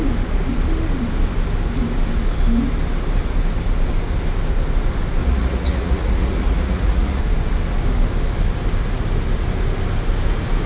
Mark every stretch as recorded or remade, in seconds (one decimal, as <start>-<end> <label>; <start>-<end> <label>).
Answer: 0.0-5.2 recorded; 5.2-7.2 remade; 7.2-10.7 recorded